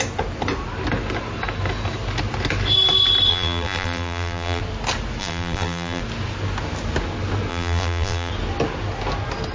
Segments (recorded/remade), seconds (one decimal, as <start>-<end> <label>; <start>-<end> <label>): 0.0-3.3 recorded; 3.3-4.6 remade; 4.6-5.2 recorded; 5.2-6.0 remade; 6.0-7.5 recorded; 7.5-8.3 remade; 8.3-9.5 recorded